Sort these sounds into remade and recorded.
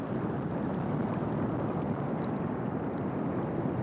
recorded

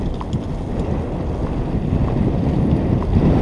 recorded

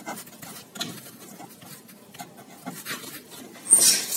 recorded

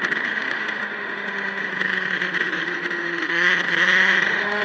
remade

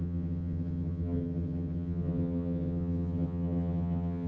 remade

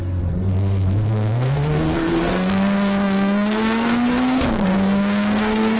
remade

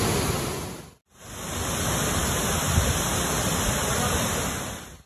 recorded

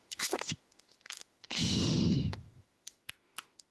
remade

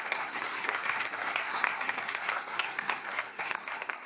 remade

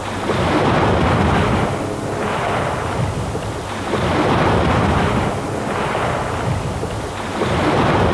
recorded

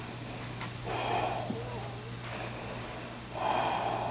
recorded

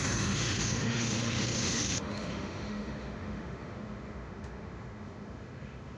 remade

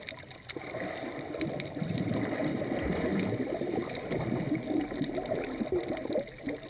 recorded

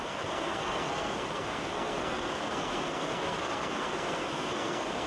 remade